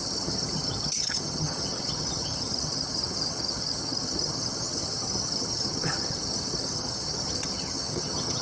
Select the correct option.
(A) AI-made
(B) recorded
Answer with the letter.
A